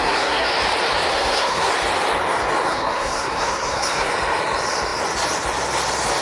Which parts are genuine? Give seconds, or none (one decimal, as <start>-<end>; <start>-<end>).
0.5-1.1; 1.7-2.7; 4.1-6.2